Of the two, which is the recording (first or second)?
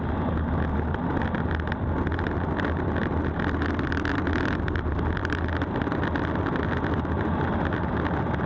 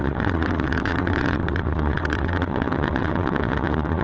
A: first